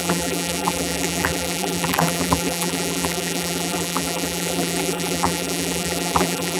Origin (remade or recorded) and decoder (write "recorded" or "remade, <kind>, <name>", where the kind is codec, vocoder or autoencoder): remade, vocoder, BigVGAN v2